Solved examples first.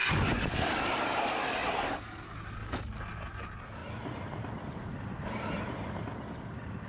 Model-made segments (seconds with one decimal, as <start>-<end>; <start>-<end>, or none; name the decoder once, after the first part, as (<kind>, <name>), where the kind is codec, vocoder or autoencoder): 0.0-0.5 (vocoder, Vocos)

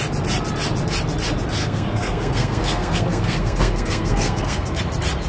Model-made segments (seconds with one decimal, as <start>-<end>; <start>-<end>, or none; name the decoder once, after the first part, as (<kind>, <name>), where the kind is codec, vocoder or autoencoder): 1.6-4.8 (codec, SNAC)

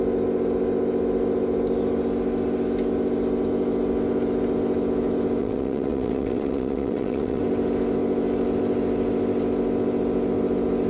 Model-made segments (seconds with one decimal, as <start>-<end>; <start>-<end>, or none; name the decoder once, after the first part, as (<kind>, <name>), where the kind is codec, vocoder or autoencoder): 5.4-7.4 (vocoder, WaveNeXt)

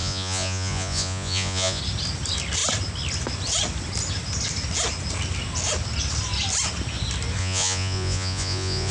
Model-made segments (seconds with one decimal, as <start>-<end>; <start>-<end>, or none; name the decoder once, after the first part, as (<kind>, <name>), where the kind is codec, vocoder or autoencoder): 0.0-1.8 (vocoder, Vocos); 7.4-8.9